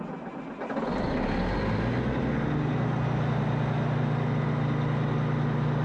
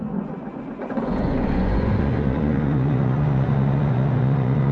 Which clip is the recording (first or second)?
first